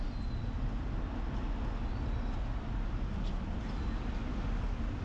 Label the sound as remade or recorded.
recorded